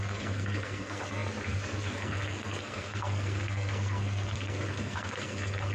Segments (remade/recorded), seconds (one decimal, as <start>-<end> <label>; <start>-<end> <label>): 0.0-5.7 remade